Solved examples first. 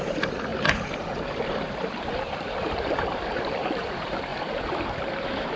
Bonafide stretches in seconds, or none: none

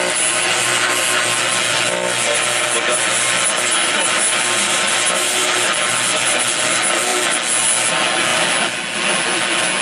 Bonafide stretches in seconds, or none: 0.0-9.8

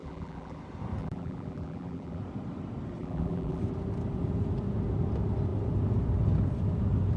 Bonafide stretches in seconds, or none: 0.6-1.0; 2.2-3.0; 3.6-7.2

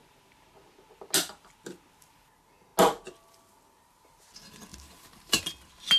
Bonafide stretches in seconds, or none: 0.0-4.7; 5.4-6.0